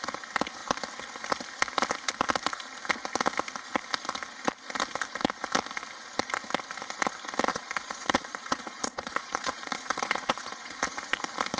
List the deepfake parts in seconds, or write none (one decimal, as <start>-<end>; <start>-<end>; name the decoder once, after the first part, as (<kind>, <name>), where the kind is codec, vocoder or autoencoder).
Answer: 7.5-10.8 (vocoder, Vocos)